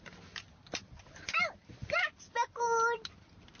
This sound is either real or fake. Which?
real